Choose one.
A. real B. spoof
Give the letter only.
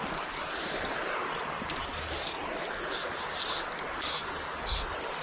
A